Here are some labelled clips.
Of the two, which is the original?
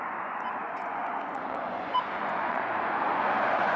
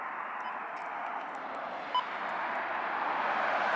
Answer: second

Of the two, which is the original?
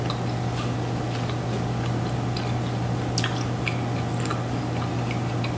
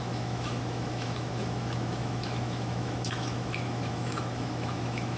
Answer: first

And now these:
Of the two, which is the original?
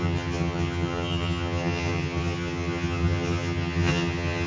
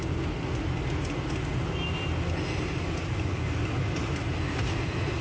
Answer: second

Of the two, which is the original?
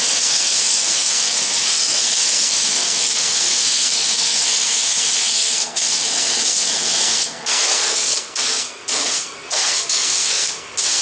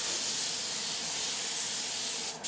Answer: second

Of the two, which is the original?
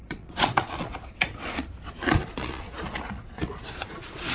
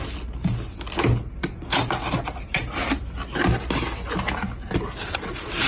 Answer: second